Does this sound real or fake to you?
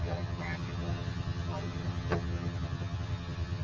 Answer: fake